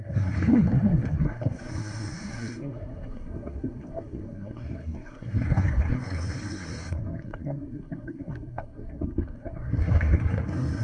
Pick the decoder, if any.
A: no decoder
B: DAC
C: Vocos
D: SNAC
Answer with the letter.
D